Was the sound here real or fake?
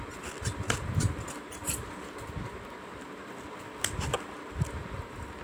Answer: real